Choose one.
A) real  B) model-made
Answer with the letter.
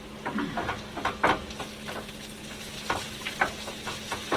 A